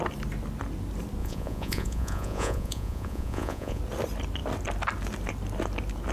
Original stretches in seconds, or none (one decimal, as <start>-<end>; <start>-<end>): 0.0-1.2; 3.8-6.1